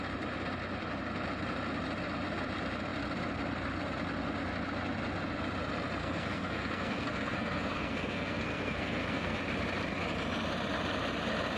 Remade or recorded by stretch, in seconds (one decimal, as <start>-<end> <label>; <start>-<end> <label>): 0.0-6.0 recorded; 6.0-9.4 remade; 9.4-11.6 recorded